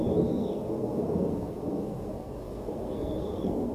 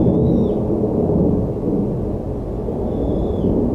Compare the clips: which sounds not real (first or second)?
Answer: first